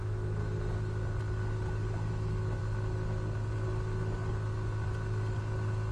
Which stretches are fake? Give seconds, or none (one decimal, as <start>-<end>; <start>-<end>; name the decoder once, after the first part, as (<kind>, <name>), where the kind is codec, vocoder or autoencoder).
0.0-0.4 (autoencoder, DAC-VAE); 2.1-2.6